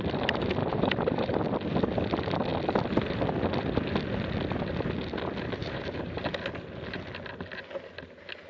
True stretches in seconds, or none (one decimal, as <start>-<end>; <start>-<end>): 0.0-0.6; 1.4-5.6; 6.2-8.5

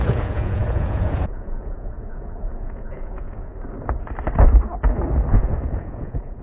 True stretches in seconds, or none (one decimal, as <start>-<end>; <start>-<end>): 3.5-5.4